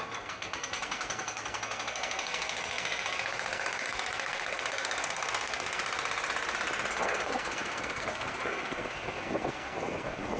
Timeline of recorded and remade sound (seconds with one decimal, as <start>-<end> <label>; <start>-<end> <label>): 0.0-5.8 remade; 5.8-6.9 recorded; 6.9-10.4 remade